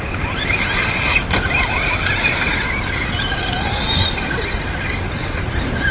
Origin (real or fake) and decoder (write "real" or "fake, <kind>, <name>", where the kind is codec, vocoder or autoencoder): real